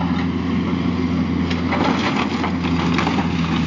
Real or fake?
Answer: real